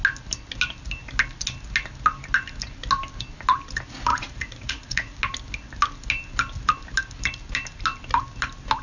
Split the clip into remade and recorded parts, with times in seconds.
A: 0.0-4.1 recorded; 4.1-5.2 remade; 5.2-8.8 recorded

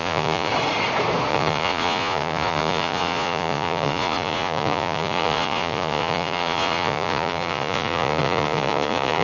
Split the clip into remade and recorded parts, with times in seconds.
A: 0.0-0.5 remade; 0.5-1.3 recorded; 1.3-9.2 remade